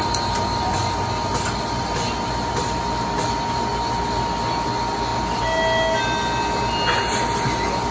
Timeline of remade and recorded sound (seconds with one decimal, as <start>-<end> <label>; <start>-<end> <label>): 0.0-7.9 recorded